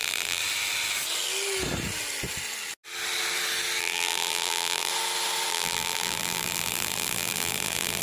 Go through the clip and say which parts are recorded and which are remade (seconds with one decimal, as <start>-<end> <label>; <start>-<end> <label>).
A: 0.0-0.4 remade; 0.4-3.8 recorded; 3.8-4.9 remade; 4.9-5.5 recorded; 5.5-8.0 remade